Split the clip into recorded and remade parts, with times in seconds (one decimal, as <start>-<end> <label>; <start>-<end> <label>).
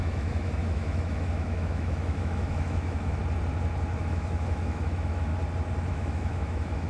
0.0-3.2 remade; 3.2-4.0 recorded; 4.0-5.3 remade; 5.3-5.9 recorded; 5.9-6.9 remade